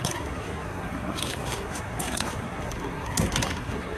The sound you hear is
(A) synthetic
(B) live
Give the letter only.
A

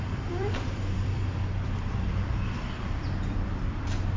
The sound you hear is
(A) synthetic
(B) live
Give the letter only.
A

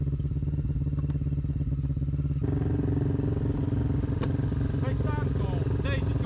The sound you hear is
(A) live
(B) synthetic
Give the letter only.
A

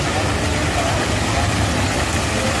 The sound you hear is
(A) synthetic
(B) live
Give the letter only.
B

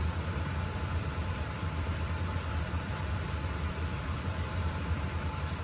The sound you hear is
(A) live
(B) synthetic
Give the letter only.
B